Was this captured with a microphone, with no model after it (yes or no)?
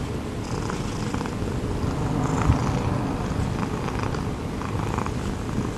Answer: yes